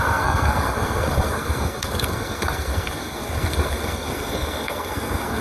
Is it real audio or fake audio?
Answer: fake